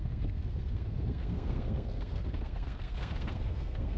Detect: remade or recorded remade